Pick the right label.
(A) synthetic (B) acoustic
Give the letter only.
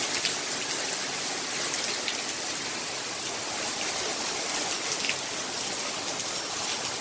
B